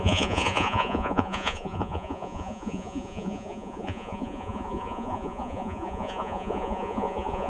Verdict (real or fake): fake